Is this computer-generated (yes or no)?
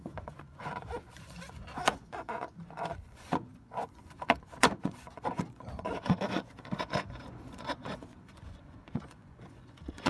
yes